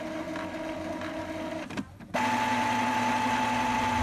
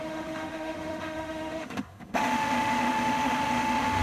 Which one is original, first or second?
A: first